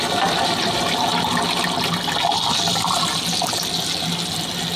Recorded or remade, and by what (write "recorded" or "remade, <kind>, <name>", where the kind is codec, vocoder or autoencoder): recorded